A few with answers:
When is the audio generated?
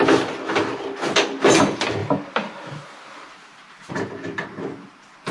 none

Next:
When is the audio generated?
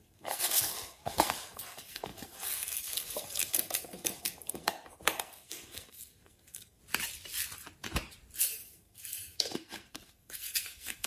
0.0-6.8 (codec, SNAC); 8.4-11.1